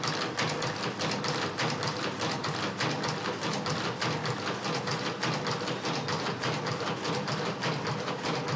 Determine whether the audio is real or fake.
real